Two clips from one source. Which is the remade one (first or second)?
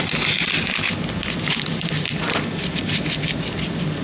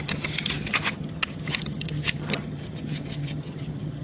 second